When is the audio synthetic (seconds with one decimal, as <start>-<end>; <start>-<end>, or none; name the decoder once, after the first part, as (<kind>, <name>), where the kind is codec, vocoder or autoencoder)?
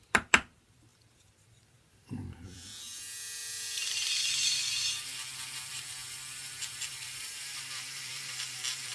0.0-8.9 (vocoder, BigVGAN v2)